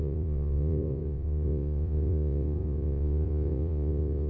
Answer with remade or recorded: remade